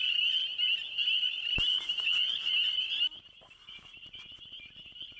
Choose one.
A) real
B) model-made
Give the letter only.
A